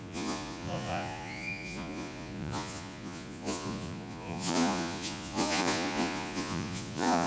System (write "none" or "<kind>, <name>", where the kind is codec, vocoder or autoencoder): vocoder, Vocos